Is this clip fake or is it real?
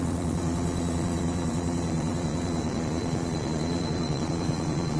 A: fake